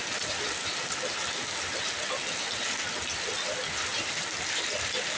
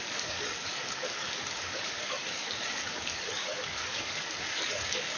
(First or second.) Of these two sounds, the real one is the first